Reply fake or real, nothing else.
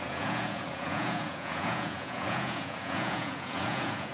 fake